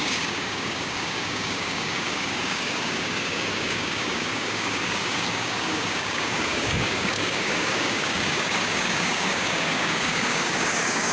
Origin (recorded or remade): remade